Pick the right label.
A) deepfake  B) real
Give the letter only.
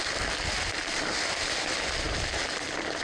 B